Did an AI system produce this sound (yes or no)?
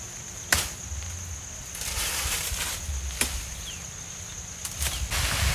no